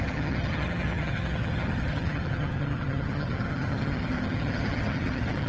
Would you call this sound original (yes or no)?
no